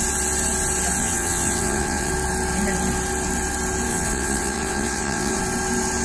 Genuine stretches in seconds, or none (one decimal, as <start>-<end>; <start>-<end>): 0.0-1.0; 2.1-3.9; 5.4-6.0

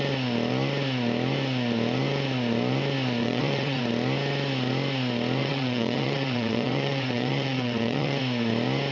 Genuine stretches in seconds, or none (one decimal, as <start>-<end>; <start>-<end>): 0.0-3.2; 3.8-5.4; 8.2-8.9

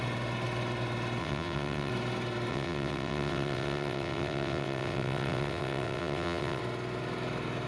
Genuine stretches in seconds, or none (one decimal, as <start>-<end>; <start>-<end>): 0.0-1.2; 1.9-2.5; 6.6-7.7

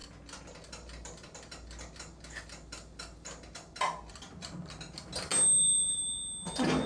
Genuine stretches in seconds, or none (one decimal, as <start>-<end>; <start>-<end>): 0.0-6.9

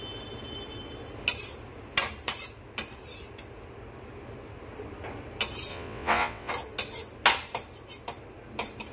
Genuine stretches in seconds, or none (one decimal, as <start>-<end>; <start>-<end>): 0.0-5.7; 6.5-8.9